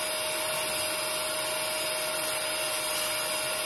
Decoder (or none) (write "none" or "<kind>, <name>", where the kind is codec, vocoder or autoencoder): none